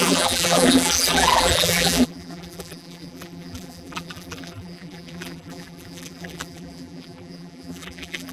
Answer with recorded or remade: remade